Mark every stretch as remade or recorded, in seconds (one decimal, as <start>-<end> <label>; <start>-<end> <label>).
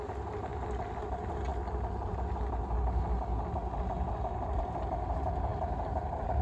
0.0-6.4 recorded